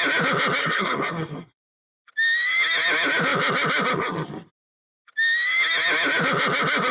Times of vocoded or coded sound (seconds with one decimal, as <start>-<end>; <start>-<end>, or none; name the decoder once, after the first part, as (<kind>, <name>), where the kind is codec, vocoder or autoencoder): 0.6-1.6 (codec, SNAC)